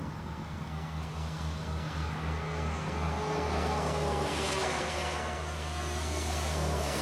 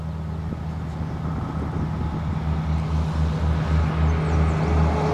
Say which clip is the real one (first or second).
second